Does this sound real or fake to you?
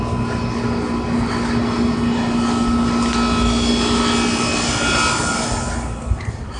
real